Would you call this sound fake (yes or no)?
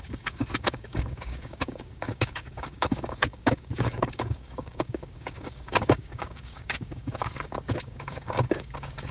yes